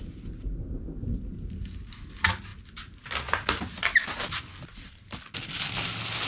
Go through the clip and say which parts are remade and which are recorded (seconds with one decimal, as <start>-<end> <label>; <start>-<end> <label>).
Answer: 0.0-6.3 recorded